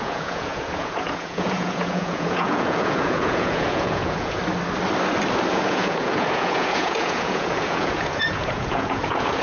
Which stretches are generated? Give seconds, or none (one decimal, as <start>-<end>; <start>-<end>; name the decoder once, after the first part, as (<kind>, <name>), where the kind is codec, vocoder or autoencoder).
0.0-4.4 (vocoder, Vocos); 5.5-9.4